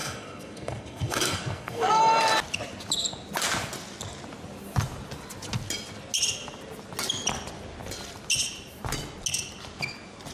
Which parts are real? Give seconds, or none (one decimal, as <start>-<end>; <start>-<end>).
2.0-10.3